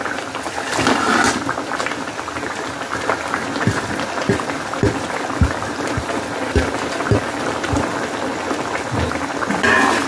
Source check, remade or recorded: recorded